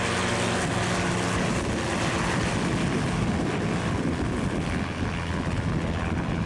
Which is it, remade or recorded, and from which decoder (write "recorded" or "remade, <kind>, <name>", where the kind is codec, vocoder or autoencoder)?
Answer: recorded